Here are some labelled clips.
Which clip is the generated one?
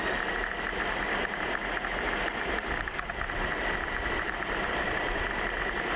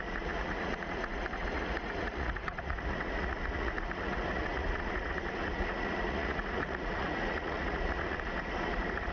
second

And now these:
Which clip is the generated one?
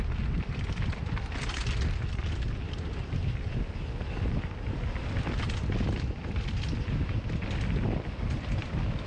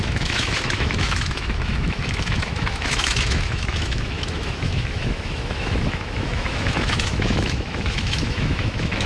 second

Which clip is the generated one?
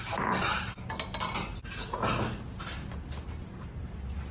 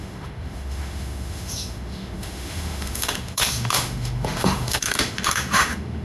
second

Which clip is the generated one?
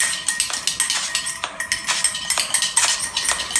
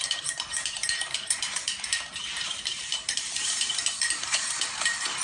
second